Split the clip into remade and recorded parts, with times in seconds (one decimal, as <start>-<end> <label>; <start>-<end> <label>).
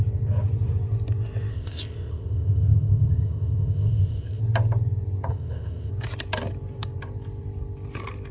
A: 0.0-1.5 recorded; 1.5-4.4 remade; 4.4-5.3 recorded; 5.3-5.9 remade; 5.9-8.3 recorded